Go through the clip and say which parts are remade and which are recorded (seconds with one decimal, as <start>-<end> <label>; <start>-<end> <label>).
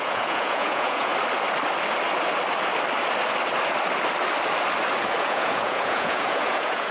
0.0-1.1 remade; 1.1-5.2 recorded; 5.2-6.9 remade